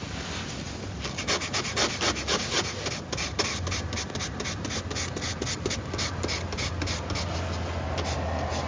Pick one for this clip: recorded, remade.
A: recorded